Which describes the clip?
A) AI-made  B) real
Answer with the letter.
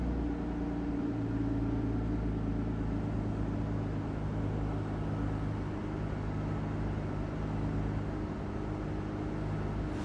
B